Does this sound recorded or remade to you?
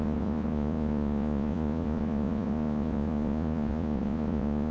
remade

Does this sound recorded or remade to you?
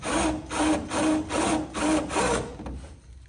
recorded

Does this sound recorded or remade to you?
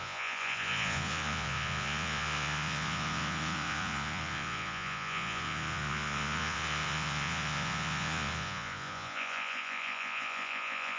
remade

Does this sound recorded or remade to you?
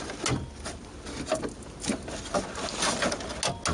recorded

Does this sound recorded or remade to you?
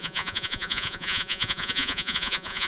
remade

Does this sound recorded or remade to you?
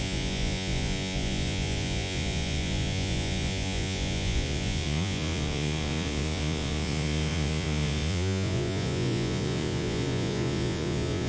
remade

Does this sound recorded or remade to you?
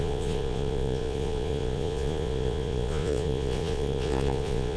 remade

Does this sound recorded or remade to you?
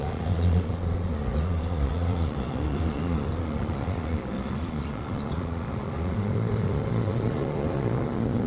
remade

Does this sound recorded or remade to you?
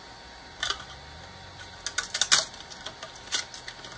recorded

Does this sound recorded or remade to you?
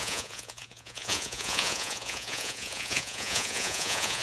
remade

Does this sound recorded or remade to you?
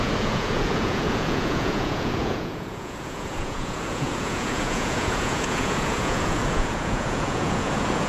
remade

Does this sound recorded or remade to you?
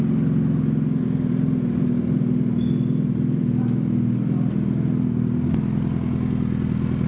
recorded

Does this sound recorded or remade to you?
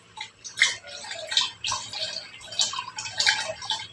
recorded